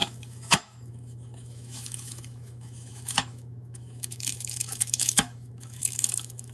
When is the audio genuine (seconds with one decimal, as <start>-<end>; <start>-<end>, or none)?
none